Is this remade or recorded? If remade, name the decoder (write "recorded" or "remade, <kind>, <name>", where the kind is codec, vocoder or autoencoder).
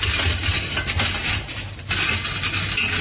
recorded